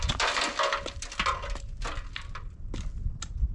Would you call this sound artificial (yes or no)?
no